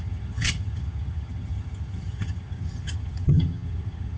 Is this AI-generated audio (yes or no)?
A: yes